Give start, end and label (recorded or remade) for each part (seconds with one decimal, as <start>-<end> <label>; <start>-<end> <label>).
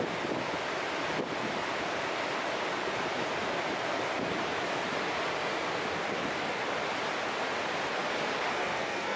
0.0-8.5 recorded; 8.5-9.2 remade